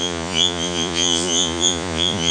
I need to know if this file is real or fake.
fake